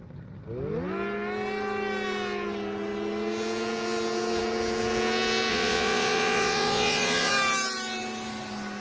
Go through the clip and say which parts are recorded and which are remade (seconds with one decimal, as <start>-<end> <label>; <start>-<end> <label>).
0.0-5.5 recorded; 5.5-7.3 remade; 7.3-8.8 recorded